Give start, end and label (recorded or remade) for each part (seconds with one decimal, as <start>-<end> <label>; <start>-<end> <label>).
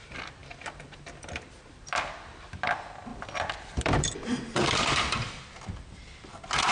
0.0-0.4 recorded; 0.4-1.4 remade; 1.4-3.1 recorded; 3.1-5.6 remade; 5.6-6.7 recorded